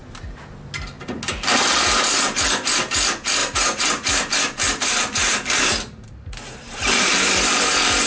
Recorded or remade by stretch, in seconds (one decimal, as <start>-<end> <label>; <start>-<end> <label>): 0.0-3.4 recorded; 3.4-8.1 remade